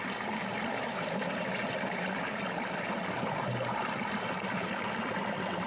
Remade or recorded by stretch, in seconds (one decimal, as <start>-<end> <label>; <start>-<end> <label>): 0.0-5.7 recorded